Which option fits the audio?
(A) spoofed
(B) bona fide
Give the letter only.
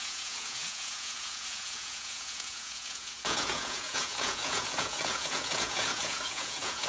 A